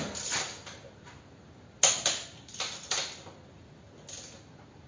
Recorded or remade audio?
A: recorded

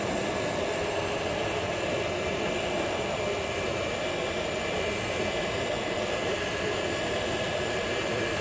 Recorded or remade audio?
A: recorded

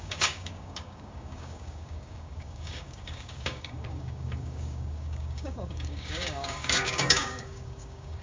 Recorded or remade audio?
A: remade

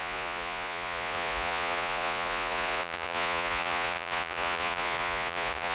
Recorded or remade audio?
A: remade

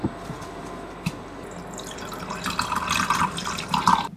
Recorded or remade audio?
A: recorded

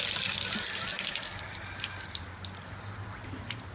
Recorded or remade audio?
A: recorded